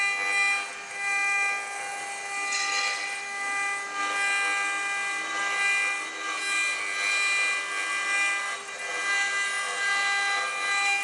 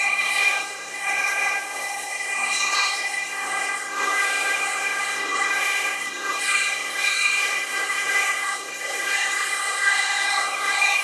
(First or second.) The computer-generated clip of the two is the second